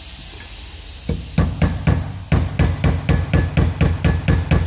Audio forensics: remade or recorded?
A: recorded